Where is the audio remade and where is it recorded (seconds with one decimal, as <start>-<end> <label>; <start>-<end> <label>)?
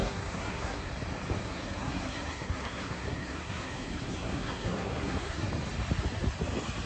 0.0-0.9 remade; 0.9-1.4 recorded; 1.4-5.5 remade; 5.5-6.9 recorded